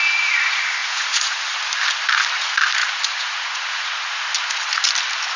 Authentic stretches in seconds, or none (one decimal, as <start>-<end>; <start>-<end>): 0.0-0.8; 1.5-2.8; 4.1-5.4